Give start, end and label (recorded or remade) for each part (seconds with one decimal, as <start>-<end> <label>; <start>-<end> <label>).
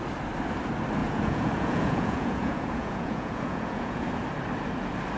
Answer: 0.0-1.0 recorded; 1.0-4.1 remade; 4.1-5.2 recorded